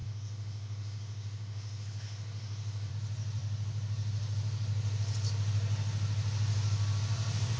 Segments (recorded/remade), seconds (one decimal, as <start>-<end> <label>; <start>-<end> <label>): 0.0-2.9 remade; 2.9-7.6 recorded